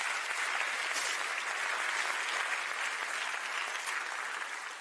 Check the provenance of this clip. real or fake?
real